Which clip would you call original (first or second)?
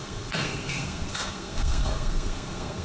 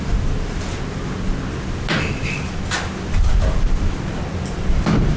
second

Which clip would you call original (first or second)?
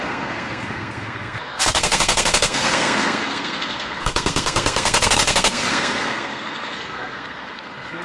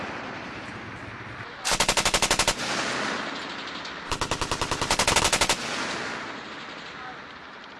second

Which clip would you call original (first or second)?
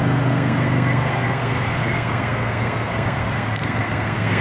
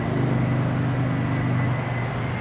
second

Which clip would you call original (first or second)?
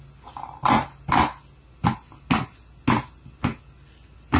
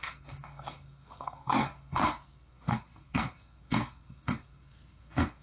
first